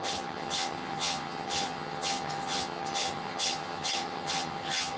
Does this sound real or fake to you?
fake